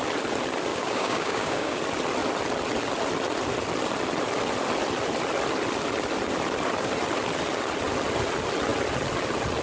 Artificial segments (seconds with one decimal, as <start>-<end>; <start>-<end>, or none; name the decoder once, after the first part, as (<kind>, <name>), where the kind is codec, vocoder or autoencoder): 0.7-1.8 (codec, DAC)